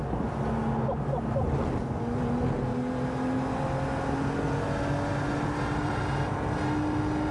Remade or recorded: recorded